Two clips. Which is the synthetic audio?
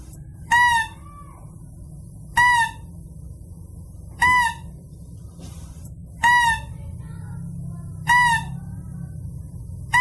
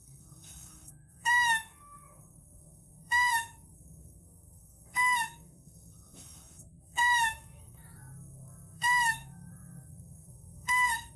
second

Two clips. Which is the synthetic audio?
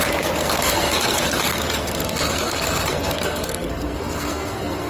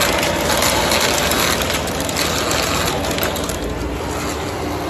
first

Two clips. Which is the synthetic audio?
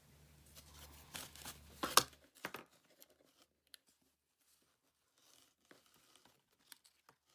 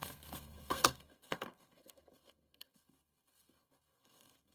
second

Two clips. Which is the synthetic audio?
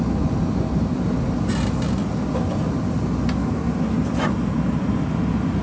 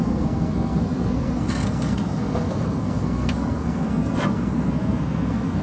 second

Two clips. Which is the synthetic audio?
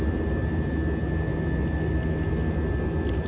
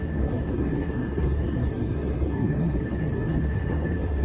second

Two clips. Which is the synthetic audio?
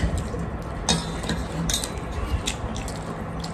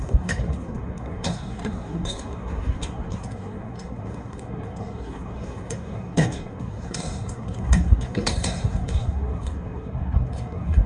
second